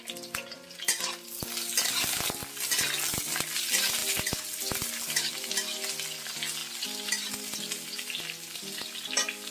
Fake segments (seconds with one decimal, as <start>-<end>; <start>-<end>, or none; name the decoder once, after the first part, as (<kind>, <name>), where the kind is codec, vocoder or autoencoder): none